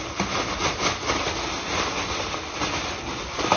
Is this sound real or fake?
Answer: real